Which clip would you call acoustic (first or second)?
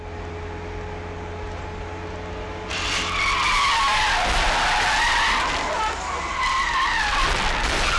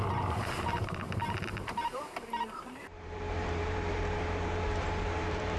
first